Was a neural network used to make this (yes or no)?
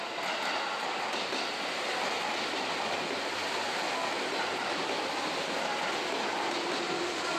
no